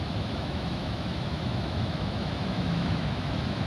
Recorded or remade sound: remade